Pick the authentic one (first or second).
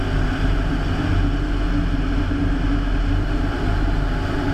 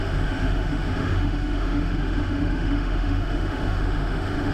first